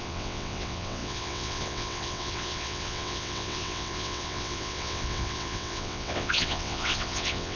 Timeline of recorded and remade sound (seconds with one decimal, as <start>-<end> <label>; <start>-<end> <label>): 0.0-7.5 remade